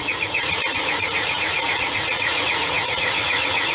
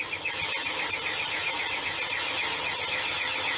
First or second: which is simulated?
first